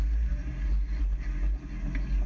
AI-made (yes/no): no